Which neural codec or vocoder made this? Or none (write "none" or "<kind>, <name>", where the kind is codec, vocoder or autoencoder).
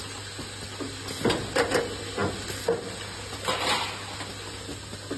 none